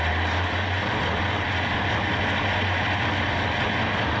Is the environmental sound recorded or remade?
recorded